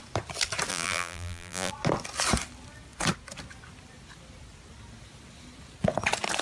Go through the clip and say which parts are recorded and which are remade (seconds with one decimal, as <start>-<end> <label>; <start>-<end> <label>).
0.0-0.7 recorded; 0.7-1.7 remade; 1.7-6.4 recorded